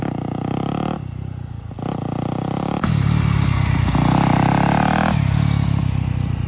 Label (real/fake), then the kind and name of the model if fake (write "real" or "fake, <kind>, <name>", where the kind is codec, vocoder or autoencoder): real